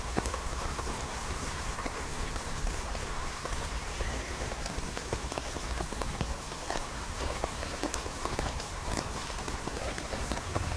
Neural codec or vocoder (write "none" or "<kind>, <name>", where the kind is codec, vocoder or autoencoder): codec, SNAC